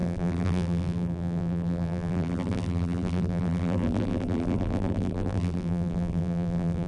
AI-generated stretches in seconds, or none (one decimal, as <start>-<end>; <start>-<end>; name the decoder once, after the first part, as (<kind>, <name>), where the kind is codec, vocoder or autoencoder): 0.0-6.9 (vocoder, BigVGAN v2)